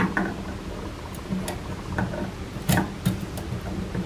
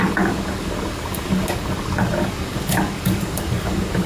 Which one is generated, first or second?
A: second